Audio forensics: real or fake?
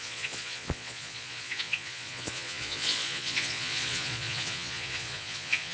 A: fake